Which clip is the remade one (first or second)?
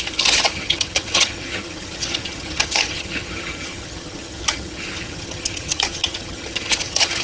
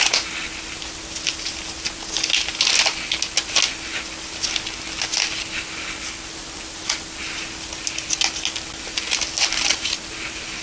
first